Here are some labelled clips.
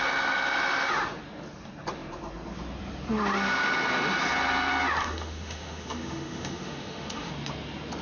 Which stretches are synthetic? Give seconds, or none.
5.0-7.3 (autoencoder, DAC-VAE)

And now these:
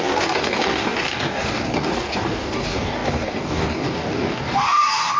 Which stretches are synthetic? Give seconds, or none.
0.0-5.2 (codec, DAC)

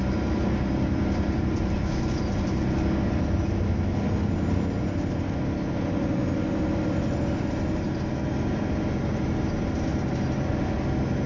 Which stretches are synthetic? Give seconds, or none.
none